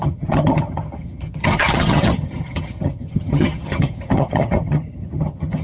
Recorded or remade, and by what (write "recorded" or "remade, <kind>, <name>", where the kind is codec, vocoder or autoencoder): remade, vocoder, HiFi-GAN